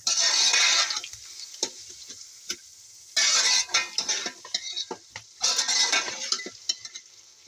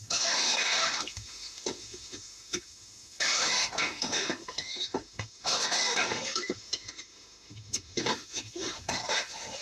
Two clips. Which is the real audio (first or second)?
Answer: first